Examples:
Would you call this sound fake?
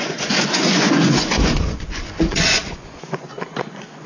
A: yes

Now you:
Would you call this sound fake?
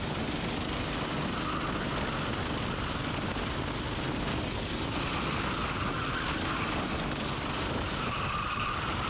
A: no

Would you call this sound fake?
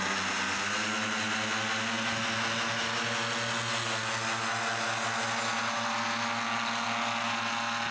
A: no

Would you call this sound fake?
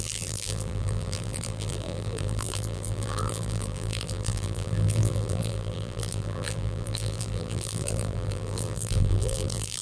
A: yes